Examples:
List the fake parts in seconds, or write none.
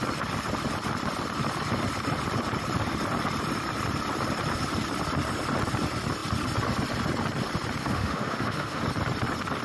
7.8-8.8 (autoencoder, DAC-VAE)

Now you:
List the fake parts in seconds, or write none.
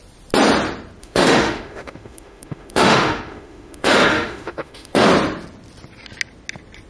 1.0-5.1 (autoencoder, DAC-VAE)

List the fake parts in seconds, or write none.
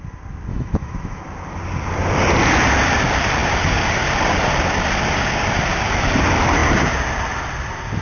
0.5-1.2 (autoencoder, DAC-VAE)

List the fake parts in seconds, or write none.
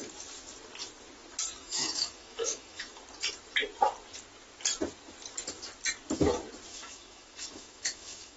1.6-3.0 (autoencoder, DAC-VAE); 6.7-8.4